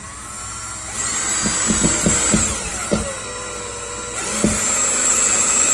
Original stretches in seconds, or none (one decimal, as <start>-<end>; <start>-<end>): 0.0-5.0